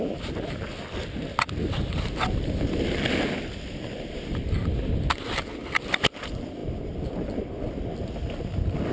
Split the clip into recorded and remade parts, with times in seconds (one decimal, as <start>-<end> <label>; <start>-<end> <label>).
0.0-8.9 recorded